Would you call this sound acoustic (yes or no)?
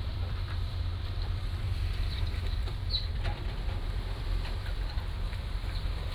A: no